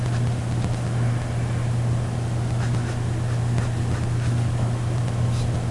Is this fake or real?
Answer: real